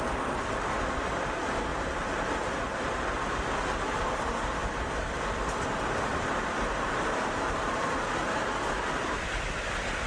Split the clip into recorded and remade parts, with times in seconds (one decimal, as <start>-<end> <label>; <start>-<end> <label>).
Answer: 0.0-1.7 recorded; 1.7-2.3 remade; 2.3-6.1 recorded; 6.1-7.7 remade; 7.7-10.1 recorded